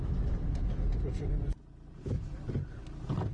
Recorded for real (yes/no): yes